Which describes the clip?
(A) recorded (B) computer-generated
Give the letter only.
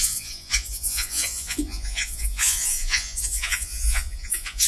B